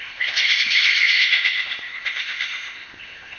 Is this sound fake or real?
fake